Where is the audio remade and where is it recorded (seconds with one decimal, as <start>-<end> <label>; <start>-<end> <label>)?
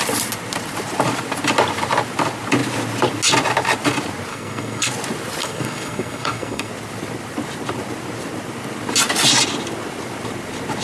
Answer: 0.0-4.3 recorded; 4.3-4.9 remade; 4.9-5.4 recorded; 5.4-6.7 remade; 6.7-10.8 recorded